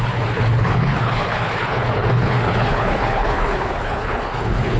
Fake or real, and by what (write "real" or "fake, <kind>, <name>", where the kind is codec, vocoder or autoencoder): fake, codec, HILCodec